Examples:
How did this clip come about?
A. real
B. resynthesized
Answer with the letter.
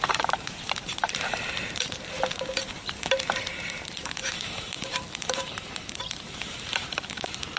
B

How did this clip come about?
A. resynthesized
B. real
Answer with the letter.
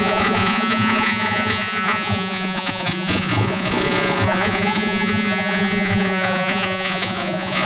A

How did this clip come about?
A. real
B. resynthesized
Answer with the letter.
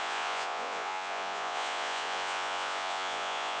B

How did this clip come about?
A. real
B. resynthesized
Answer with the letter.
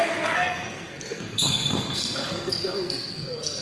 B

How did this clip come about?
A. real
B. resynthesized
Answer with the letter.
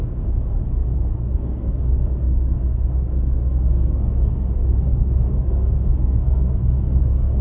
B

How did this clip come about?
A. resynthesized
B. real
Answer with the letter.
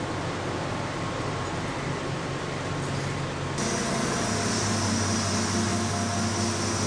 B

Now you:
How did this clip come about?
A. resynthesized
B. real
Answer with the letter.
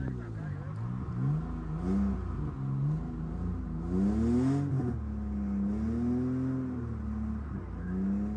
B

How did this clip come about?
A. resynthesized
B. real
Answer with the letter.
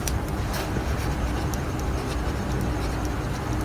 B